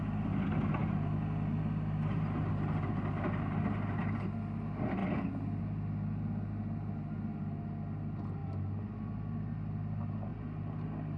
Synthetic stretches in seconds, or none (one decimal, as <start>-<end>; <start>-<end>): none